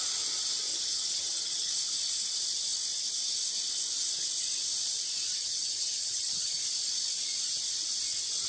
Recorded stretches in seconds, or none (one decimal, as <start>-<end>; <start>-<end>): 0.0-0.7; 1.7-5.4; 6.6-8.5